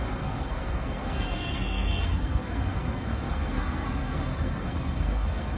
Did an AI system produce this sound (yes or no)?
yes